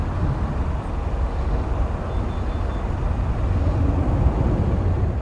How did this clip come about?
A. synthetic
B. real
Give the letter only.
B